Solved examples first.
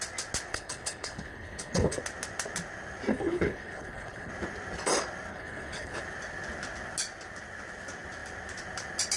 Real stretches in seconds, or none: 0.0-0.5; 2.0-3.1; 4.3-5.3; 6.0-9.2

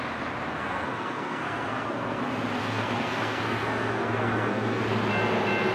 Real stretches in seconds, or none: 0.0-0.5; 2.2-2.6; 4.8-5.7

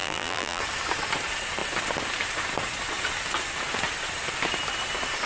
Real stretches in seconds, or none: 0.6-5.3

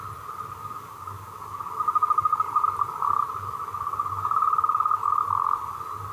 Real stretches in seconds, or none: 0.0-0.6; 1.7-6.1

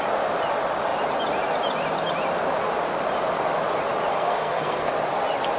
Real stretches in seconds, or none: 0.0-4.1; 4.9-5.6